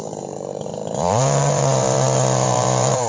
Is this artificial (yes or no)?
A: yes